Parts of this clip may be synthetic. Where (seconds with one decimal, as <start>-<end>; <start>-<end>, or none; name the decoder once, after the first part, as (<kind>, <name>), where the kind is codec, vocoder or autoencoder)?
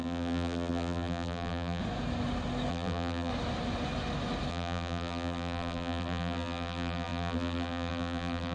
0.0-1.8 (vocoder, BigVGAN v2); 2.7-3.3; 4.5-8.5